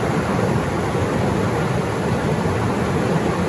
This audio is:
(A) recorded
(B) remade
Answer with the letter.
A